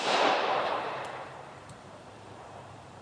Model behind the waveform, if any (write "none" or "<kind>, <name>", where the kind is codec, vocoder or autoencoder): vocoder, BigVGAN v2